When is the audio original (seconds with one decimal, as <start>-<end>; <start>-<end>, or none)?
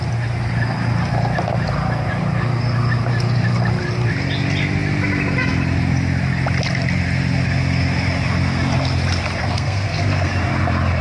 0.0-9.4; 10.3-11.0